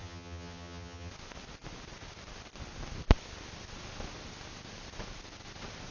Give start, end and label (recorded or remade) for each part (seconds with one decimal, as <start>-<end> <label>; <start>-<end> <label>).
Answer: 0.0-1.1 remade; 1.1-5.9 recorded